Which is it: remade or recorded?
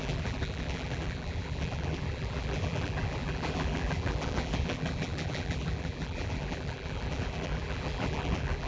remade